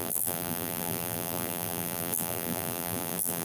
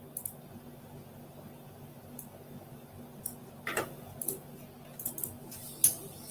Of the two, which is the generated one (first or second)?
first